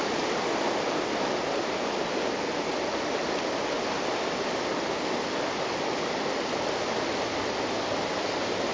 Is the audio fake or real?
real